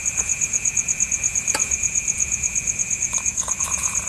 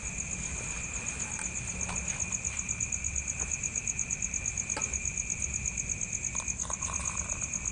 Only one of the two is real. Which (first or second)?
second